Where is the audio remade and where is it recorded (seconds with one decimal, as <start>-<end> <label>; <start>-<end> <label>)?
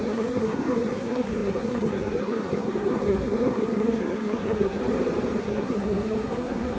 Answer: 0.0-4.8 remade; 4.8-5.4 recorded; 5.4-6.8 remade